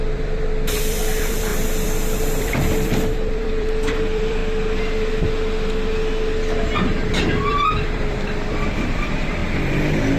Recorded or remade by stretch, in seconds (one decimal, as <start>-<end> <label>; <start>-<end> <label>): 0.0-4.4 remade; 4.4-7.4 recorded; 7.4-9.4 remade; 9.4-10.2 recorded